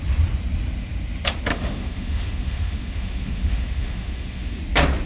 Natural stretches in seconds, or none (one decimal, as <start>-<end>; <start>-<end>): 0.0-1.5; 4.6-5.1